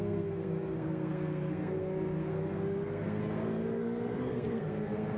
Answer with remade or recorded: remade